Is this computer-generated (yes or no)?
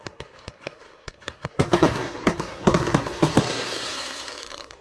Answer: yes